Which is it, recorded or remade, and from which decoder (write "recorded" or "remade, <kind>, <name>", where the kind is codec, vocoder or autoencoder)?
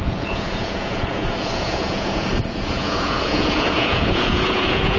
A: remade, vocoder, Vocos